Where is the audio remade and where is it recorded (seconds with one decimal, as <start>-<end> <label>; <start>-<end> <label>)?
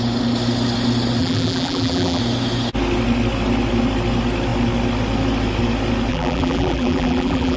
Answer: 0.0-1.2 recorded; 1.2-2.2 remade; 2.2-6.1 recorded; 6.1-7.6 remade